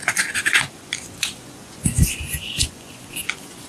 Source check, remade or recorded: remade